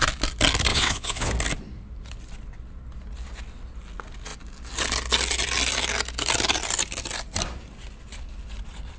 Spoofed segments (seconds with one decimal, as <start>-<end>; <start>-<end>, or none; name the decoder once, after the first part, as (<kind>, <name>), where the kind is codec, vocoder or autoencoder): 0.7-1.3 (vocoder, WaveNeXt)